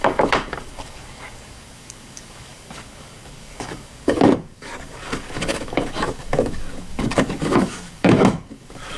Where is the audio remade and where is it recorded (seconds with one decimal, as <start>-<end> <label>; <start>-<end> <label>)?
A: 0.0-9.0 remade